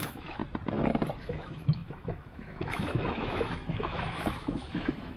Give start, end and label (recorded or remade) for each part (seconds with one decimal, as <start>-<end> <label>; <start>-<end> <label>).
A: 0.0-0.4 remade; 0.4-1.2 recorded; 1.2-5.2 remade

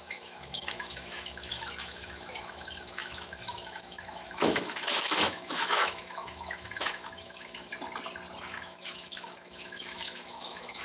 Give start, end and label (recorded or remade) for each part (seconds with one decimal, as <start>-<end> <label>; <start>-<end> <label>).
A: 0.0-7.7 remade; 7.7-8.4 recorded; 8.4-10.8 remade